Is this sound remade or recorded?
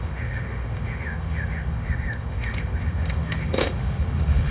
remade